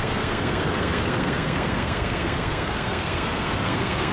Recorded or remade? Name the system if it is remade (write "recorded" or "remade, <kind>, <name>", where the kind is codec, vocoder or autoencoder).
remade, codec, SNAC